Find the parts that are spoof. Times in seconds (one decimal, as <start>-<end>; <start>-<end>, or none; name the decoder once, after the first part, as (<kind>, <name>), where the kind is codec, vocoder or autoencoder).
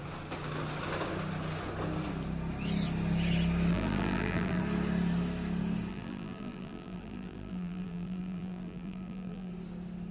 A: 3.7-4.6 (vocoder, BigVGAN v2); 5.9-9.5